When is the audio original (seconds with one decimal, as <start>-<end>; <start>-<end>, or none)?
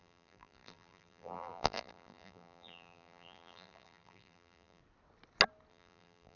4.8-5.7